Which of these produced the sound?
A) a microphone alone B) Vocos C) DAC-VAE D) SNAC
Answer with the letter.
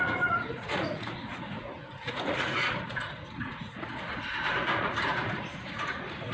B